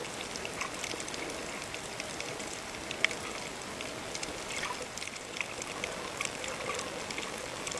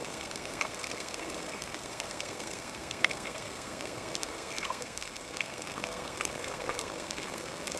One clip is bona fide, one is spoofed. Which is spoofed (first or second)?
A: second